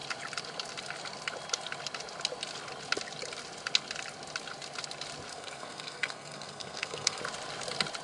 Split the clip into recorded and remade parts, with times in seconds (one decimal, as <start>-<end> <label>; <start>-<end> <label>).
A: 0.0-5.3 recorded; 5.3-7.2 remade; 7.2-8.0 recorded